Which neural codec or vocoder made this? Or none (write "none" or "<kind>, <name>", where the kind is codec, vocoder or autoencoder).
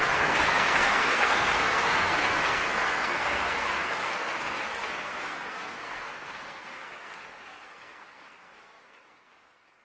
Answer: codec, SNAC